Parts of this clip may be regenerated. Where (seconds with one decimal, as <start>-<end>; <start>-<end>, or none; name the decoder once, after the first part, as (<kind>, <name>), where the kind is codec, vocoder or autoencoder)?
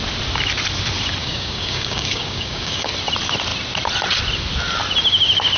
1.2-2.9 (codec, DAC)